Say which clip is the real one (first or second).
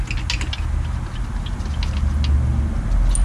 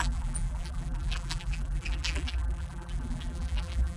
first